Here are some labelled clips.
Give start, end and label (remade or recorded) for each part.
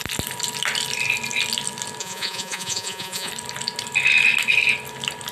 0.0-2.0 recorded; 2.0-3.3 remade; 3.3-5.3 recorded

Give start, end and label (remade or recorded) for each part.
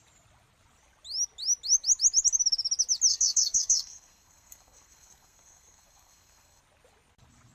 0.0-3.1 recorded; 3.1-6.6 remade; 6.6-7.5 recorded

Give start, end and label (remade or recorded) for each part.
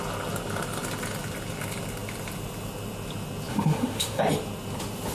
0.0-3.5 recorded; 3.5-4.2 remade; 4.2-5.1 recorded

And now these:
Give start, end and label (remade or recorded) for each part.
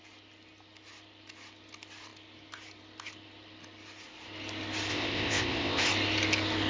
0.0-4.9 recorded; 4.9-5.9 remade; 5.9-6.7 recorded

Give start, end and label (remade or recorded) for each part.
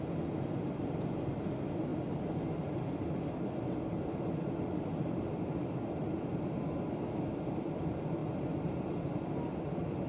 0.0-10.1 remade